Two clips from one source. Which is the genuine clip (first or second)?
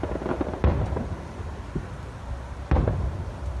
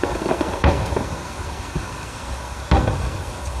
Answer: first